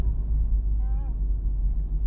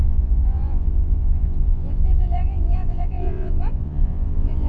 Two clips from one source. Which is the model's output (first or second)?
second